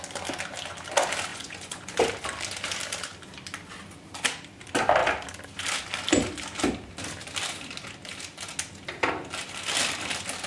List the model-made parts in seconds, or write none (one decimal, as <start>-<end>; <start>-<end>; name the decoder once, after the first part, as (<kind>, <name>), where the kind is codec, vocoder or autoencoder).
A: 1.3-1.9 (vocoder, Vocos)